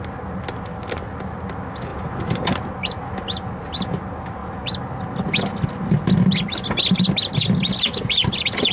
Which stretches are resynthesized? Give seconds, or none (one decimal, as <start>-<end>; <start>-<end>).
1.9-2.5